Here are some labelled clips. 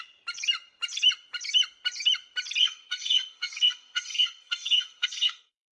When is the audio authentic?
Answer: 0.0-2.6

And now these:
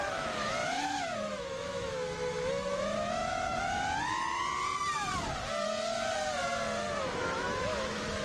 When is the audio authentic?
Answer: 4.4-7.0

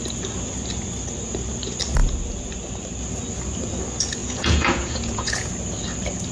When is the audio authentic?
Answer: 0.0-4.2; 5.5-6.3

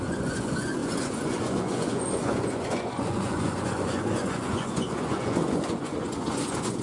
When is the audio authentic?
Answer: none